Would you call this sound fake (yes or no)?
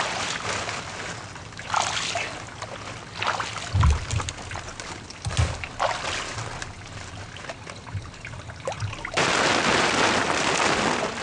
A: no